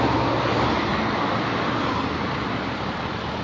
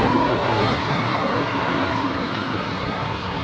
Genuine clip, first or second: first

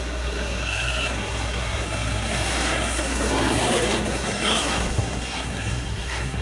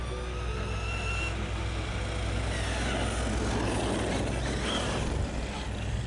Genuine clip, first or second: second